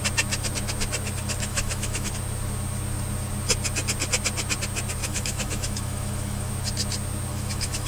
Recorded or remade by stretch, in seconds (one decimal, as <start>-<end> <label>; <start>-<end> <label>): 0.0-1.5 recorded; 1.5-2.1 remade; 2.1-5.0 recorded; 5.0-6.5 remade; 6.5-7.3 recorded; 7.3-7.9 remade